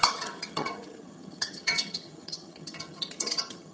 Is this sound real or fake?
fake